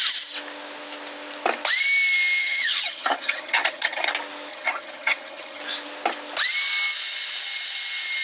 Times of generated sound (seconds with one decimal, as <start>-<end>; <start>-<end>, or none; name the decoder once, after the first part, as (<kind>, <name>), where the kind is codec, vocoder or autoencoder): 2.4-4.1 (vocoder, HiFi-GAN); 4.5-5.6